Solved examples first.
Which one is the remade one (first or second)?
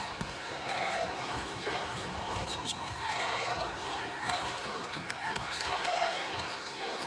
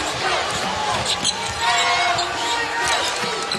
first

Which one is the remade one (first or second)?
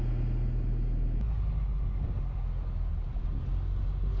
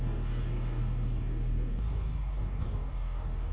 second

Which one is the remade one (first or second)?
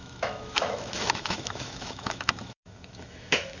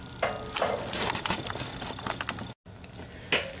first